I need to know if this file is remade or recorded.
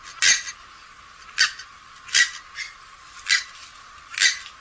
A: recorded